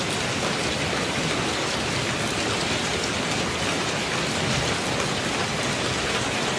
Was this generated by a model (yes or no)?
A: no